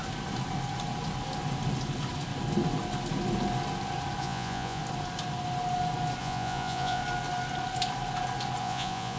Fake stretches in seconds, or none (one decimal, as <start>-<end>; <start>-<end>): 4.2-4.8; 6.2-7.0; 8.6-9.2